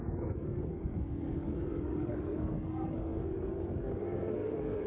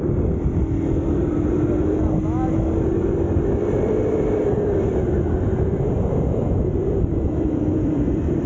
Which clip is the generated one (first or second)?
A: first